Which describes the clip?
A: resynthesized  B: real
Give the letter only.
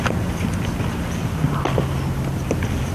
B